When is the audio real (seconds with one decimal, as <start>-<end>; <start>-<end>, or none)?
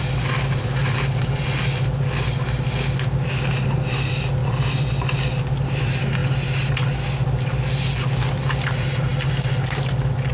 0.0-10.3